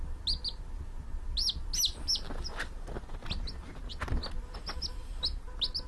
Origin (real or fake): real